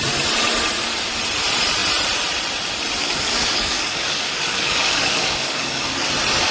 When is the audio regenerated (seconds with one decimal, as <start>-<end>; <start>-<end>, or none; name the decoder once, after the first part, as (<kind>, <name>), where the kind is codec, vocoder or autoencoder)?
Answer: 3.0-6.1 (codec, DAC)

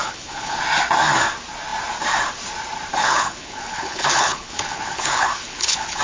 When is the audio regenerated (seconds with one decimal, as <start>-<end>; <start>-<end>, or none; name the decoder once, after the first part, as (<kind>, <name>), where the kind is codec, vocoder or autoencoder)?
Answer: 0.0-0.6 (codec, HILCodec); 3.0-6.0